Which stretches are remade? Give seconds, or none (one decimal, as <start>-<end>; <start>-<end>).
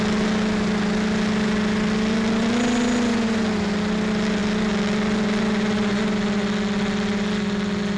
none